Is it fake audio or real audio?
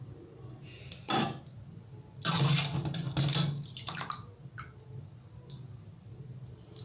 real